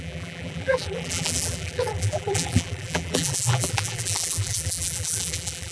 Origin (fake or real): fake